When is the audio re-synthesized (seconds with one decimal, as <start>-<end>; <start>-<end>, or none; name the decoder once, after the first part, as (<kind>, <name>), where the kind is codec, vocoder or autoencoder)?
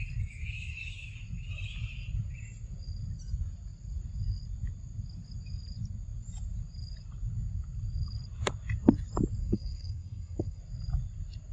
9.4-10.6 (codec, SNAC)